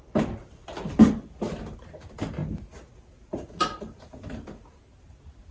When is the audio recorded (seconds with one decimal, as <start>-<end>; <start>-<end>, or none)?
0.0-5.5

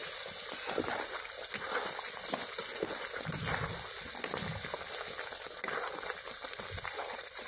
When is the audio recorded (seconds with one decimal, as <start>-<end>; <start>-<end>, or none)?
0.0-7.5